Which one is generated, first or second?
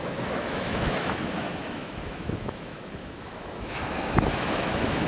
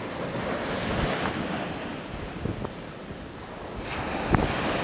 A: first